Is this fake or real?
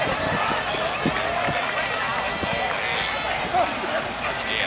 real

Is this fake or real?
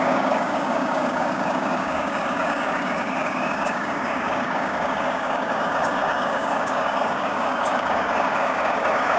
fake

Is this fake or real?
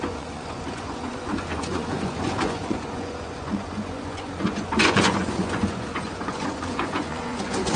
fake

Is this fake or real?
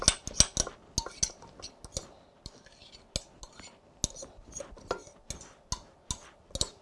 real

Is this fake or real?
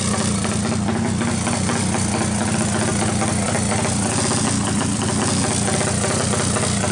real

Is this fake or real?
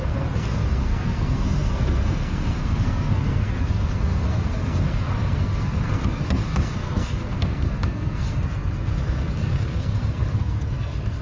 fake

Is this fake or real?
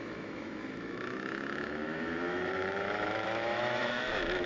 fake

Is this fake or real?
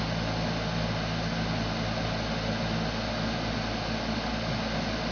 real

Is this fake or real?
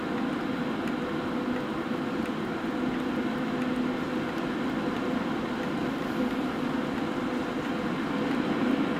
real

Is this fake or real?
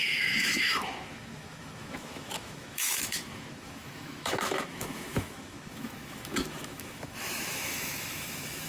fake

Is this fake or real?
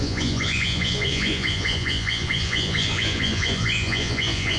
fake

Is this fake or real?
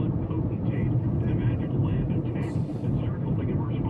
fake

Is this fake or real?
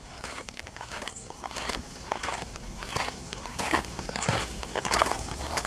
fake